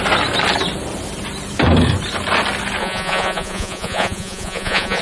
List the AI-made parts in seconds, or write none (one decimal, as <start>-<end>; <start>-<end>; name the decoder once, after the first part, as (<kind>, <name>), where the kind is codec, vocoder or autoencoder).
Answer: 2.8-5.0 (vocoder, Vocos)